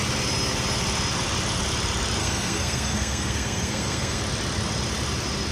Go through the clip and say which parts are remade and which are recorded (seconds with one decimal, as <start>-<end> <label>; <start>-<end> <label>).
0.0-2.2 recorded; 2.2-4.2 remade; 4.2-5.5 recorded